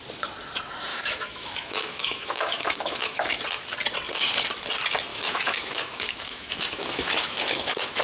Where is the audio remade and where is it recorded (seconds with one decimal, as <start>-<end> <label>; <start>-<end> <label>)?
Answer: 0.0-0.9 recorded; 0.9-3.4 remade; 3.4-5.1 recorded; 5.1-8.0 remade